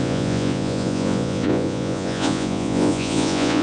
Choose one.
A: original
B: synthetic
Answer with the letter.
B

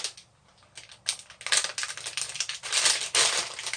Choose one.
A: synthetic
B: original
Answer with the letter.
B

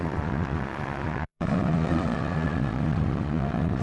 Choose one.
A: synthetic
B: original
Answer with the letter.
A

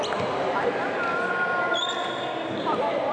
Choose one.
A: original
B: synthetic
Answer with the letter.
A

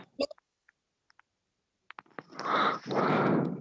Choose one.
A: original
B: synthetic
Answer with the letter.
A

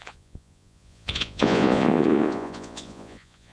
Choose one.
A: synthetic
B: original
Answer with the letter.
A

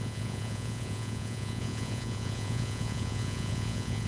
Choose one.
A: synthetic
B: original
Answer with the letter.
A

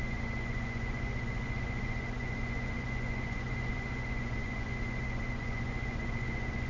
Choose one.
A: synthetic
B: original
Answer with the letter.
A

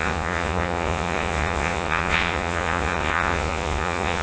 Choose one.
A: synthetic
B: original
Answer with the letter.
A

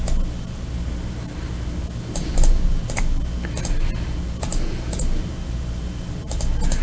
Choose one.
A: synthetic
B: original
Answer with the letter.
B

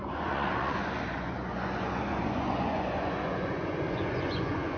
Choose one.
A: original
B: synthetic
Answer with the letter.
B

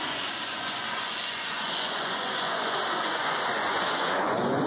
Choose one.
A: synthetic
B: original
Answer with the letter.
A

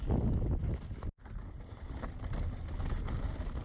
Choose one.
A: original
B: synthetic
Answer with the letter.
A